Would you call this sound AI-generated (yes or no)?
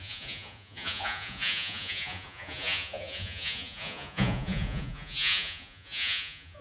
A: yes